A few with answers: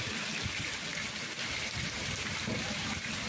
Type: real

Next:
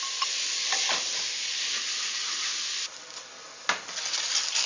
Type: real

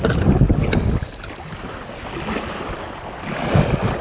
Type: real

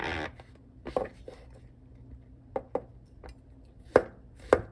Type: real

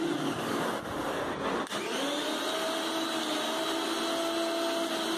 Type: real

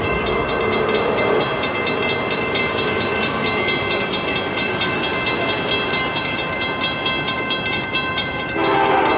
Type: real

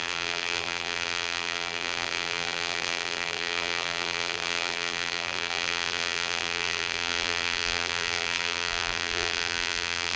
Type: fake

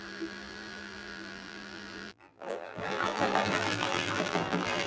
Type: fake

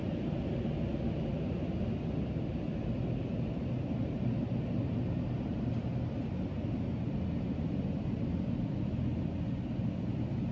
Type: real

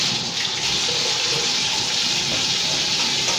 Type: fake